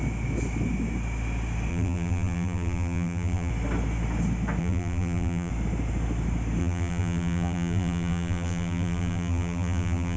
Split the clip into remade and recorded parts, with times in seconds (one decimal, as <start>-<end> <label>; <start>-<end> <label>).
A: 0.0-1.7 recorded; 1.7-3.5 remade; 3.5-4.6 recorded; 4.6-5.5 remade; 5.5-6.6 recorded; 6.6-10.2 remade